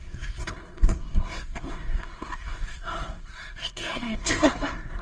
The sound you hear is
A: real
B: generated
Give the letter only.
B